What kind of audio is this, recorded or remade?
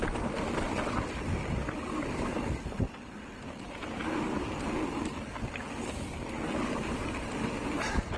recorded